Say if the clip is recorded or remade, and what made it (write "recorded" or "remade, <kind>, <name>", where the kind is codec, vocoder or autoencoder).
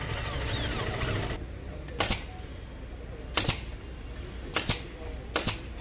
recorded